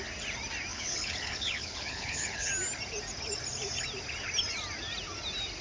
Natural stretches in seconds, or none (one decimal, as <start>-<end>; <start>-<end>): 0.0-0.7; 2.5-5.6